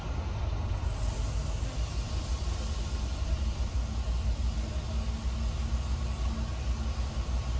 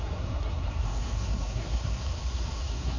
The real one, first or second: first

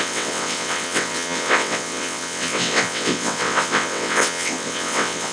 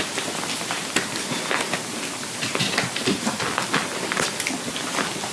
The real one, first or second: second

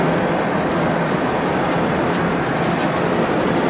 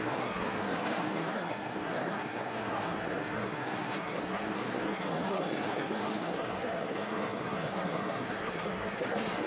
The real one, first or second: first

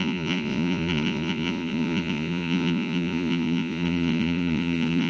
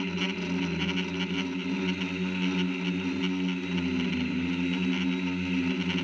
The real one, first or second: second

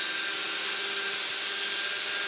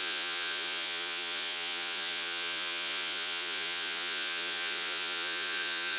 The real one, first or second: first